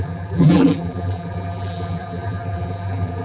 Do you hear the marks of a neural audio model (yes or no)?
yes